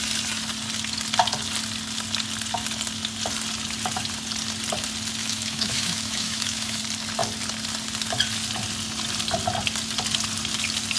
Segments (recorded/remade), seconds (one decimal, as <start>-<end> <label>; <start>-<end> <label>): 0.0-5.2 recorded; 5.2-6.8 remade; 6.8-11.0 recorded